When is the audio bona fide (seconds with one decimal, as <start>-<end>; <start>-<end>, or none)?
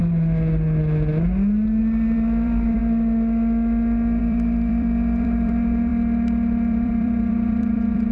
0.0-1.8; 2.8-4.2